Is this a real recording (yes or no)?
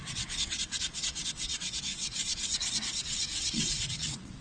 no